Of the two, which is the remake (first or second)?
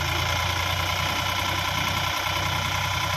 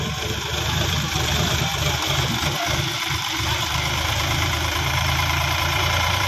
second